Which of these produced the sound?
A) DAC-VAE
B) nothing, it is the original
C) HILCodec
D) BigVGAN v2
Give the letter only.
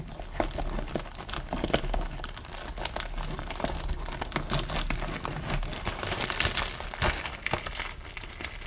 B